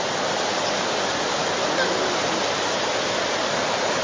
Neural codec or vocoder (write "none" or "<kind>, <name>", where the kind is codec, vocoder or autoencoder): none